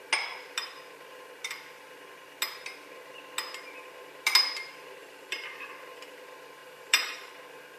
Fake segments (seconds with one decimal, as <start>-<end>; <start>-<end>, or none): 5.0-5.7; 6.6-7.3